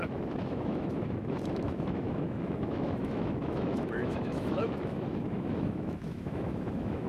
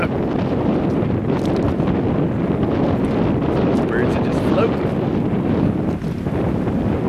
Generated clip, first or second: first